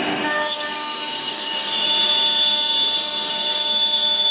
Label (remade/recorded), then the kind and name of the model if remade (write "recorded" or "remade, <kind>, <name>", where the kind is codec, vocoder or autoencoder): remade, codec, DAC